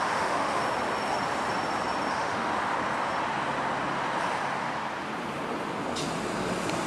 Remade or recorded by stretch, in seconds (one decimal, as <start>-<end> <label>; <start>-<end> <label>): 0.0-0.6 remade; 0.6-2.1 recorded; 2.1-2.5 remade; 2.5-6.9 recorded